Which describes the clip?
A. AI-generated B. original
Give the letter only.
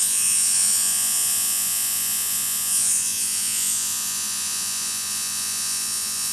A